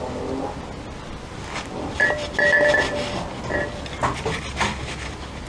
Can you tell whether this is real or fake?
real